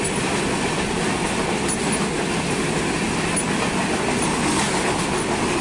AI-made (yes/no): no